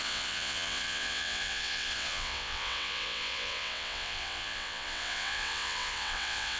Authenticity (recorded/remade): remade